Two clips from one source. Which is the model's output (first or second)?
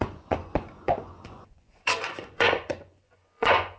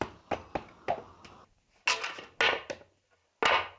first